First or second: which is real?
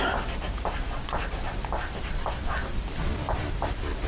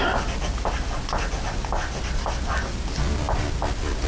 second